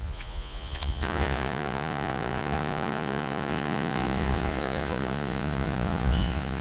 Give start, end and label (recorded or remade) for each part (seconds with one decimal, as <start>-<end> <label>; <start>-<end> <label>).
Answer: 0.0-6.6 remade